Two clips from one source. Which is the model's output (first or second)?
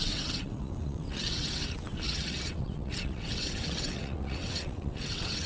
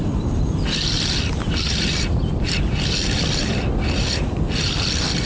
first